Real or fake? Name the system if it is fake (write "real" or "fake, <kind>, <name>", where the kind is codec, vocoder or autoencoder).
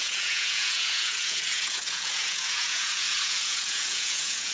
fake, vocoder, Vocos